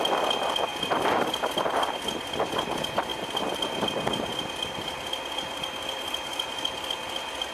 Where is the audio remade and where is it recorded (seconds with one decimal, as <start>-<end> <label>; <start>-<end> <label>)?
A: 0.0-0.7 recorded; 0.7-1.5 remade; 1.5-7.5 recorded